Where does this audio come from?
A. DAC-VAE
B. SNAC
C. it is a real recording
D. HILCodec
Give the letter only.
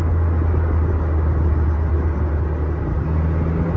C